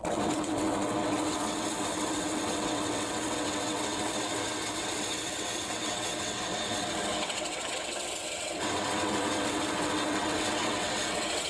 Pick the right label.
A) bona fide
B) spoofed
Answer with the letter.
B